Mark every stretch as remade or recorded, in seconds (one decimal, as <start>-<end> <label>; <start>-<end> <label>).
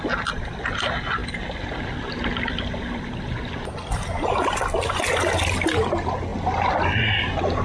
0.0-7.6 recorded